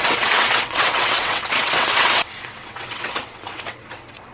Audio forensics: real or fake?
fake